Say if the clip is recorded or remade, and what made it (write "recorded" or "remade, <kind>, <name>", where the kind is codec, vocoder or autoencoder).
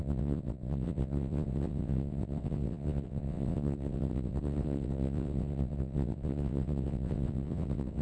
remade, vocoder, WaveNeXt